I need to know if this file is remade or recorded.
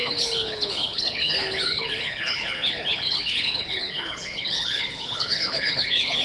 remade